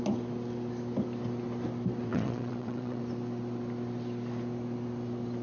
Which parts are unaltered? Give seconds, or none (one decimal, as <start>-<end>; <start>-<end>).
0.0-2.1; 3.0-5.4

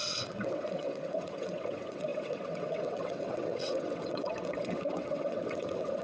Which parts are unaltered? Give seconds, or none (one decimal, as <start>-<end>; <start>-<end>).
none

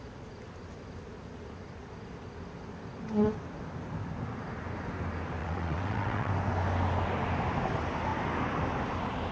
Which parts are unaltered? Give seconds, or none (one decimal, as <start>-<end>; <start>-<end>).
0.0-5.4; 6.3-9.3